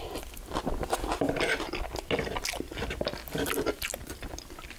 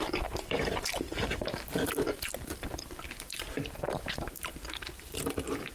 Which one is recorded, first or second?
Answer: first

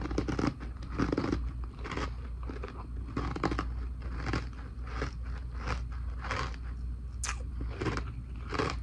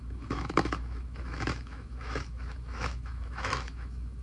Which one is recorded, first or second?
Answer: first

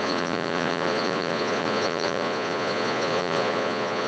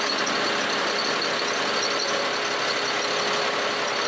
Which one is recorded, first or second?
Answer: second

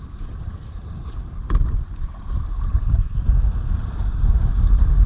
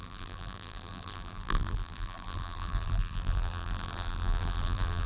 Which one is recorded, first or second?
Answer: first